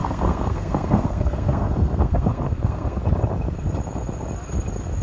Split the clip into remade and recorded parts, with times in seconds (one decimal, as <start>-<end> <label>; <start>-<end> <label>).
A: 0.0-3.0 remade; 3.0-5.0 recorded